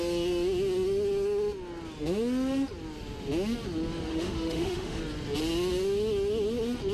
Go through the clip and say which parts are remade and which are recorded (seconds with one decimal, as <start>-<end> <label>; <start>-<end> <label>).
0.0-4.1 recorded; 4.1-5.0 remade; 5.0-6.9 recorded